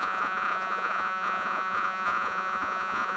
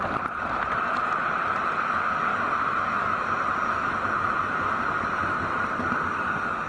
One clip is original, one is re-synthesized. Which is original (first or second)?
second